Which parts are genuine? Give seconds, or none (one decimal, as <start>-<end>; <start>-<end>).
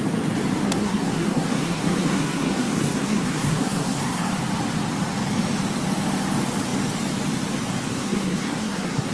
0.0-0.6; 4.3-7.9